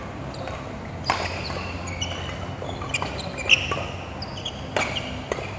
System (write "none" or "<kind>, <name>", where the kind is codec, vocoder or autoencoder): none